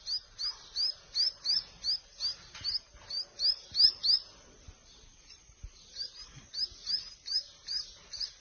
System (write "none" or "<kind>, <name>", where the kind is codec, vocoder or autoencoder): none